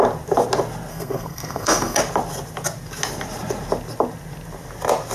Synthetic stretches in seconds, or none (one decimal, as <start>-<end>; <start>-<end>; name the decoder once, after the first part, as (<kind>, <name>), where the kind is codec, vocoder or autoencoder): 0.9-2.0 (codec, SNAC)